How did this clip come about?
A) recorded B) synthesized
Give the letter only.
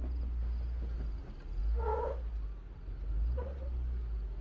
A